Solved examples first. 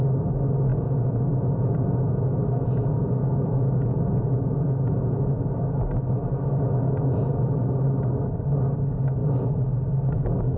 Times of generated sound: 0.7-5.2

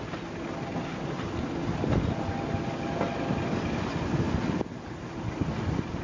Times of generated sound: none